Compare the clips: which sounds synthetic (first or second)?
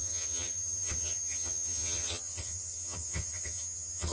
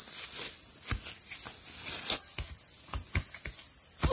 first